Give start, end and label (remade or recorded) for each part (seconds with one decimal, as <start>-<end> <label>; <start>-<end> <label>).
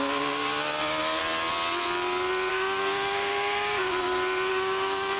0.0-1.2 remade; 1.2-2.5 recorded; 2.5-3.8 remade; 3.8-4.5 recorded; 4.5-5.2 remade